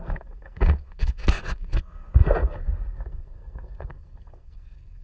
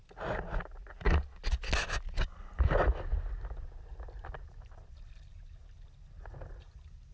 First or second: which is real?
second